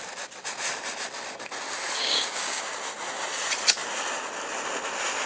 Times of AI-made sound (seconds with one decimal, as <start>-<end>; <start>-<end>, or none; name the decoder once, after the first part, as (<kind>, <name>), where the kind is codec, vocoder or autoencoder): 2.0-2.6 (codec, DAC)